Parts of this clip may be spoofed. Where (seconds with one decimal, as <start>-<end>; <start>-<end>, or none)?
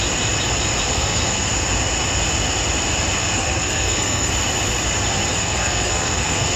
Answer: 0.9-1.5; 3.2-4.3; 5.3-6.6